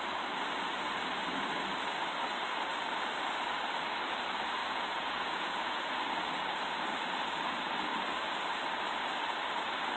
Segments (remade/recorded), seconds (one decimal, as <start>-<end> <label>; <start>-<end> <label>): 0.0-4.6 recorded; 4.6-6.0 remade; 6.0-10.0 recorded